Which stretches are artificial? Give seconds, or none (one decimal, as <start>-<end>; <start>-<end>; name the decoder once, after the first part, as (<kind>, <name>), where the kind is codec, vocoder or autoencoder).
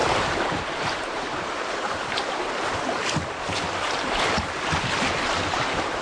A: 0.0-2.3 (vocoder, BigVGAN v2)